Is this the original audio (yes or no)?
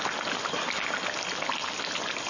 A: yes